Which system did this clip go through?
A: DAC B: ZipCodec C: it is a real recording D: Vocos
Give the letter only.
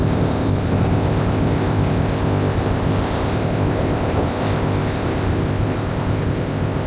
B